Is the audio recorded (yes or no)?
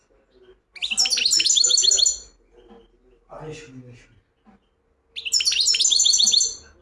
yes